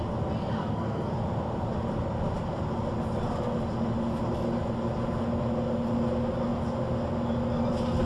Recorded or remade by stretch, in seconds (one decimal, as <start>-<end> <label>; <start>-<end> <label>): 0.0-0.6 recorded; 0.6-1.1 remade; 1.1-8.1 recorded